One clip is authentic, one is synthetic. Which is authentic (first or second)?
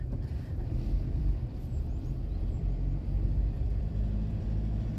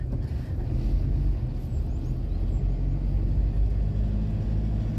second